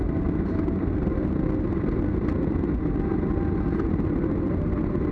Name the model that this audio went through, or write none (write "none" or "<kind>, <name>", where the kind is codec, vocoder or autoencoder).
none